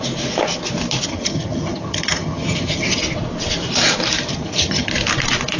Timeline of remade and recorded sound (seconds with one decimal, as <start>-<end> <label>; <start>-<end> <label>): 0.0-1.1 recorded; 1.1-3.0 remade; 3.0-4.3 recorded; 4.3-4.9 remade; 4.9-5.6 recorded